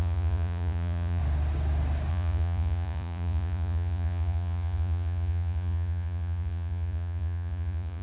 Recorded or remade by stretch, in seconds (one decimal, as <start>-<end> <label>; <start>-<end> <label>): 0.0-1.2 remade; 1.2-2.1 recorded; 2.1-8.0 remade